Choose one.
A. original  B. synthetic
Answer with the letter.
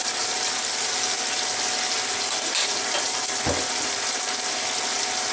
A